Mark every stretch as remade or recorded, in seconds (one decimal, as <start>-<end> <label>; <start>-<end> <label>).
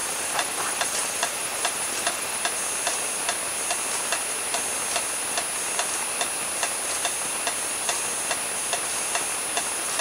0.0-2.4 remade; 2.4-10.0 recorded